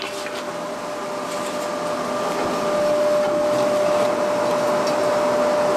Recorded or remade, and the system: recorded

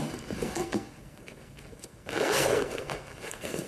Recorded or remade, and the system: remade, codec, SNAC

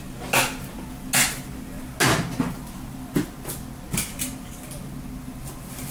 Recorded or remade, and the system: recorded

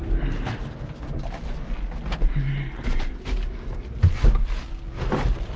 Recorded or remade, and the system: recorded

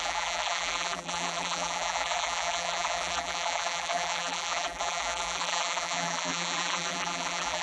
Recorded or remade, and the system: remade, vocoder, BigVGAN v2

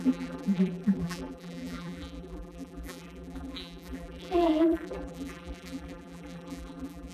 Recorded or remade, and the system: remade, vocoder, BigVGAN v2